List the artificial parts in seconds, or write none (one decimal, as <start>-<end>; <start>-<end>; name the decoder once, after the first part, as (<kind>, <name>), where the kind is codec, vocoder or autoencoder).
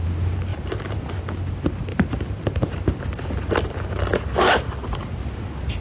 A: 0.5-1.0 (vocoder, BigVGAN v2); 1.9-2.7